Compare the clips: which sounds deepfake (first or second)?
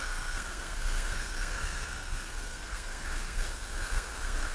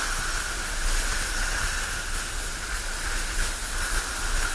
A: first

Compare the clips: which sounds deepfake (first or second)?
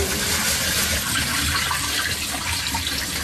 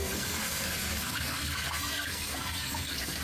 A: second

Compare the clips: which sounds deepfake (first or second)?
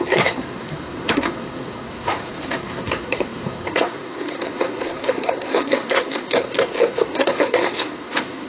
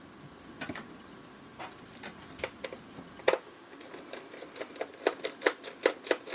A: first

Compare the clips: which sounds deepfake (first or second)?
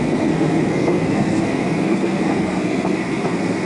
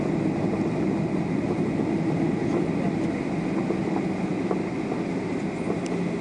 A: first